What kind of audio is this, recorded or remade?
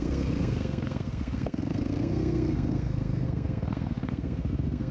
remade